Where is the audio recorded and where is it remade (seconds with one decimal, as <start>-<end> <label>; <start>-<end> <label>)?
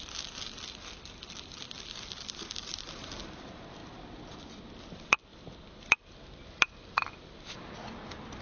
0.0-5.3 remade; 5.3-6.0 recorded; 6.0-8.4 remade